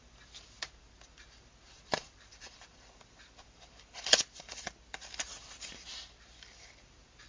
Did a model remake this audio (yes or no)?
yes